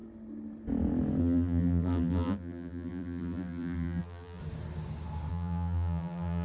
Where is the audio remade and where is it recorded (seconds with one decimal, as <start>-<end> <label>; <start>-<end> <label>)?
0.0-1.2 recorded; 1.2-4.4 remade; 4.4-5.3 recorded; 5.3-6.4 remade